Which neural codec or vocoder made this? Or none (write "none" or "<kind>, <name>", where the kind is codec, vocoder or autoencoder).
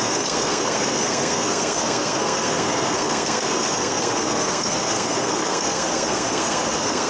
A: codec, SNAC